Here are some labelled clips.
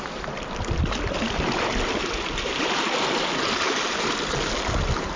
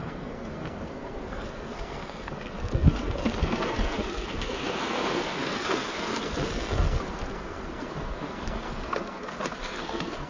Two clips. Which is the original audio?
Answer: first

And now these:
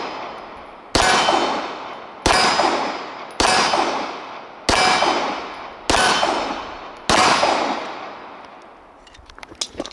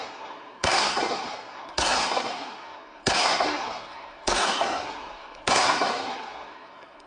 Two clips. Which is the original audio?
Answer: first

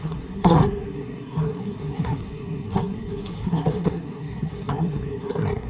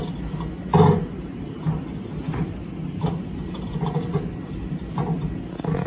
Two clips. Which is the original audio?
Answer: second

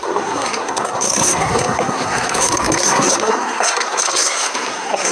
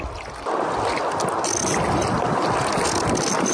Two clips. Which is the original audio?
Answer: second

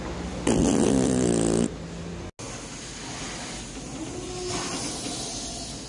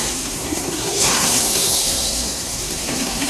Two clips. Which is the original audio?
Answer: first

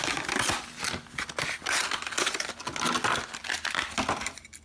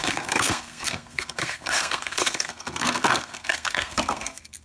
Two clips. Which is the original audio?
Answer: first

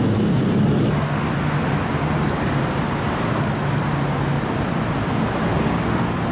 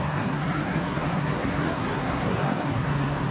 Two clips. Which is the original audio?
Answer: first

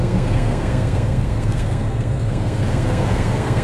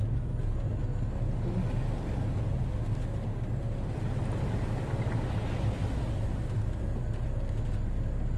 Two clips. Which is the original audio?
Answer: second